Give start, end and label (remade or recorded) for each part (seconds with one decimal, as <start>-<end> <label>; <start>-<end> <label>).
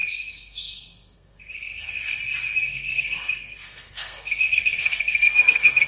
0.0-2.2 remade; 2.2-2.7 recorded; 2.7-5.9 remade